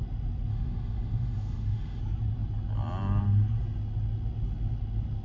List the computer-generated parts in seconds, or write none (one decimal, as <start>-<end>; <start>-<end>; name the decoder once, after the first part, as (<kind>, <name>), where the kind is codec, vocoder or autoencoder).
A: 0.5-2.0 (autoencoder, DAC-VAE)